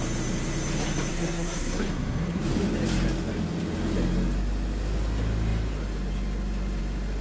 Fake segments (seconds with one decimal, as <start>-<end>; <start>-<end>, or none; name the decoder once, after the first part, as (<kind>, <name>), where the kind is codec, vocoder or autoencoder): 1.1-2.4 (codec, SNAC)